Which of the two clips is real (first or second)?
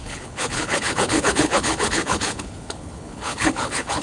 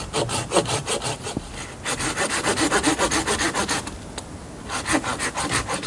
second